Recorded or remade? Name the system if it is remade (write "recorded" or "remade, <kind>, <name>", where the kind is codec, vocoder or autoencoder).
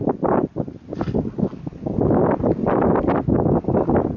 recorded